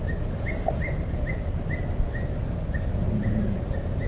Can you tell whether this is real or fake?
real